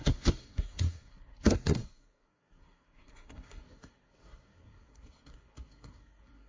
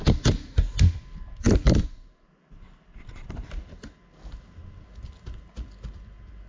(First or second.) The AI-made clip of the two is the first